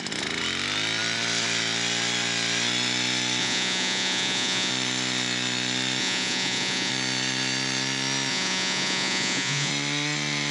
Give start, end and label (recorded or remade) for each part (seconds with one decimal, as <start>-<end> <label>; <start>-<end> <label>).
0.0-3.4 recorded; 3.4-4.7 remade; 4.7-6.0 recorded; 6.0-6.9 remade; 6.9-8.3 recorded; 8.3-9.7 remade; 9.7-10.5 recorded